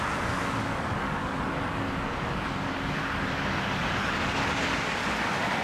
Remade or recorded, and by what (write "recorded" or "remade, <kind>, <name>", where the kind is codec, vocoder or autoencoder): remade, codec, DAC